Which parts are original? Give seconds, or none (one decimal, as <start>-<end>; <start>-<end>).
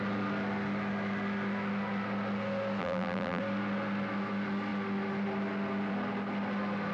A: 0.0-2.8; 3.4-6.9